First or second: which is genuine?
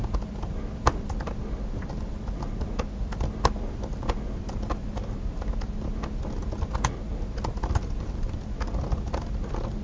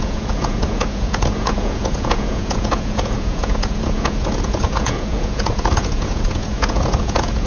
first